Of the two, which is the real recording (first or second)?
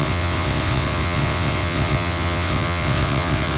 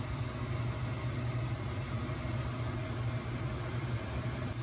second